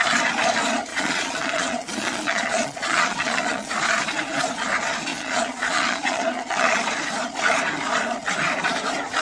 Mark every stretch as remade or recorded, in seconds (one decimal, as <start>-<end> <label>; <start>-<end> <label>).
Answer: 0.0-0.9 recorded; 0.9-3.7 remade; 3.7-5.1 recorded; 5.1-6.8 remade; 6.8-9.2 recorded